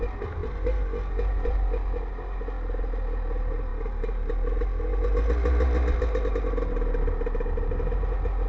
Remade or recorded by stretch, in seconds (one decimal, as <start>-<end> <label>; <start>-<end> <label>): 0.0-8.5 recorded